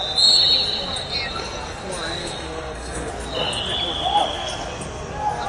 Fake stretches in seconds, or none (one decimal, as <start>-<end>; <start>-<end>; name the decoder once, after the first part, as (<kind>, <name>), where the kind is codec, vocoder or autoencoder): 2.2-3.1 (codec, SNAC)